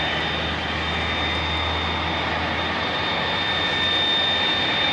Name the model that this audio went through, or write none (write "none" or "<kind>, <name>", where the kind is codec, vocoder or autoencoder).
none